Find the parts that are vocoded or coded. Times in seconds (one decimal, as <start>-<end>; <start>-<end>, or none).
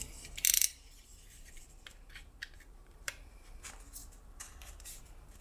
1.1-3.6; 4.0-5.4